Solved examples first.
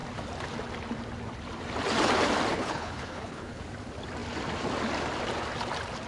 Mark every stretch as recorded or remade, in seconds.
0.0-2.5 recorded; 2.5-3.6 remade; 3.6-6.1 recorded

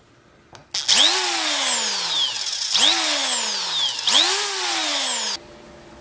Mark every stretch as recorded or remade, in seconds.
0.0-6.0 recorded

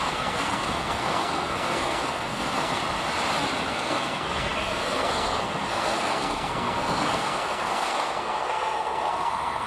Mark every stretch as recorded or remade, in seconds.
0.0-2.8 remade; 2.8-3.7 recorded; 3.7-9.7 remade

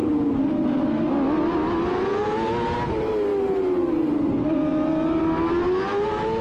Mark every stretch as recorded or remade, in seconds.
0.0-6.4 recorded

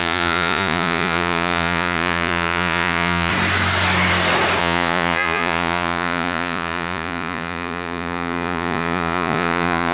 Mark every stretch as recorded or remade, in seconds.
0.0-3.3 remade; 3.3-4.6 recorded; 4.6-9.9 remade

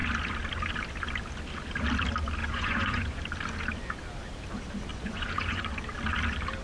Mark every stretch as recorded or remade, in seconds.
0.0-2.4 recorded; 2.4-3.2 remade; 3.2-4.9 recorded; 4.9-5.7 remade; 5.7-6.6 recorded

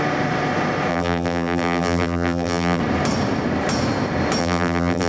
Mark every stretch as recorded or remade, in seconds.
0.0-0.9 recorded; 0.9-2.8 remade; 2.8-4.4 recorded; 4.4-5.1 remade